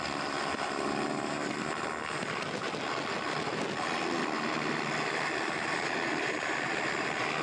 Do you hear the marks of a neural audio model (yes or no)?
no